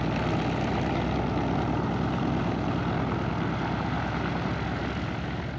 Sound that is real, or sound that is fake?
real